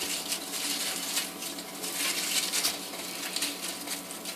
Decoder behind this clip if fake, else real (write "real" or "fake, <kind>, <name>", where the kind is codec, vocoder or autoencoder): real